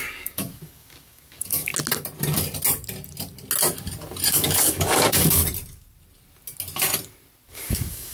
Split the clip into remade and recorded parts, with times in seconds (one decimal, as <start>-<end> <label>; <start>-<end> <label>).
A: 0.0-1.7 remade; 1.7-4.3 recorded; 4.3-5.4 remade; 5.4-7.5 recorded; 7.5-8.1 remade

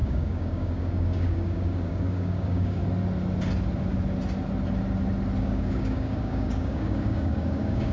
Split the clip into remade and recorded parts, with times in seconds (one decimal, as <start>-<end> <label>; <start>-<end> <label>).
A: 0.0-2.8 remade; 2.8-5.4 recorded; 5.4-7.9 remade

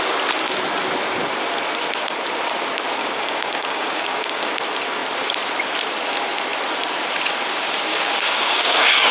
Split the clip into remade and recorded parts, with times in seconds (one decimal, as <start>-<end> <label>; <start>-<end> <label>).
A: 0.0-3.0 recorded; 3.0-4.5 remade; 4.5-7.9 recorded; 7.9-9.1 remade

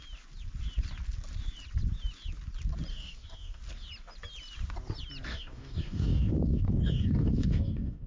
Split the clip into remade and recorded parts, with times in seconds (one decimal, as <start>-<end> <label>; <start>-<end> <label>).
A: 0.0-2.9 recorded; 2.9-3.6 remade; 3.6-5.3 recorded; 5.3-8.1 remade

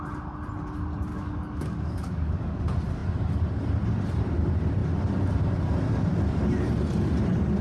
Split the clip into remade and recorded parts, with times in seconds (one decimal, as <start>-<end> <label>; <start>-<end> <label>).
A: 0.0-1.1 recorded; 1.1-2.6 remade; 2.6-7.6 recorded